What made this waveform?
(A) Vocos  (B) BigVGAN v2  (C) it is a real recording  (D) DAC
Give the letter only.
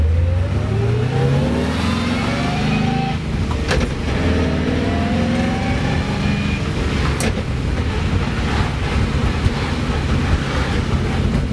C